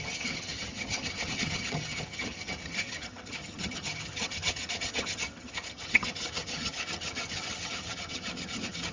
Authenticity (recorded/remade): remade